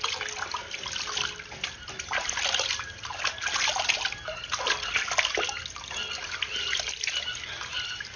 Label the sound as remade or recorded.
recorded